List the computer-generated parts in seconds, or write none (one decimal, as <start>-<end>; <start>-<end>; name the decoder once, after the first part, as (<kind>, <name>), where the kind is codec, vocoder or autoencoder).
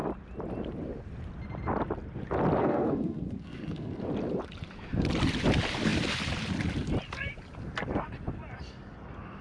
2.6-4.0 (codec, SNAC)